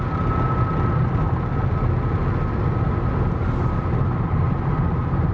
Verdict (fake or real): real